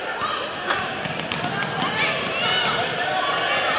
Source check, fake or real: real